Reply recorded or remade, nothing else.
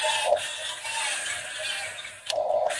recorded